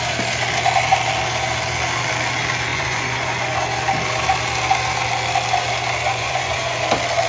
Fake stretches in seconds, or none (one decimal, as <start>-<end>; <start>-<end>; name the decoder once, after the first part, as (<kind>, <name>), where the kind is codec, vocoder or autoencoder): 2.7-3.5 (vocoder, Vocos); 6.1-6.8